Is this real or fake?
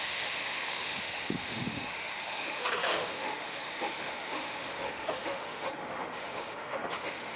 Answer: fake